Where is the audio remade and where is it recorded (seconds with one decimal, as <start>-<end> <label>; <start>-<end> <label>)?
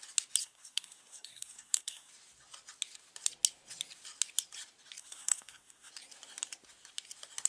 0.0-0.4 recorded; 0.4-2.1 remade; 2.1-5.0 recorded; 5.0-5.9 remade; 5.9-7.5 recorded